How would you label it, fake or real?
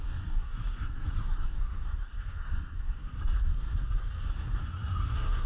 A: fake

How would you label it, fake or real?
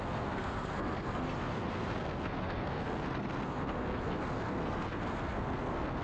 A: fake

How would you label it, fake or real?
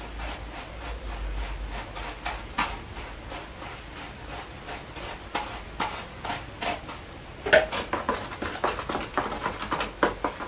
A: real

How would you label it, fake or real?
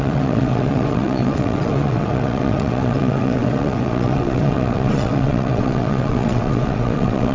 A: fake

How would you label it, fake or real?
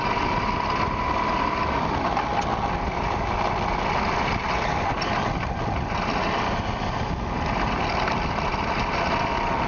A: real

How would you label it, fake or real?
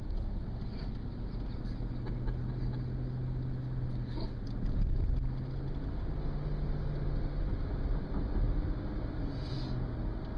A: real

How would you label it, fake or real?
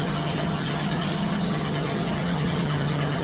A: fake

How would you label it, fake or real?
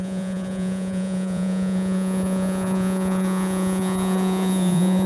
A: fake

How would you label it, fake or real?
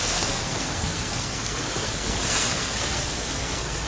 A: fake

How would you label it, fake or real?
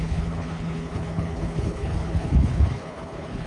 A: fake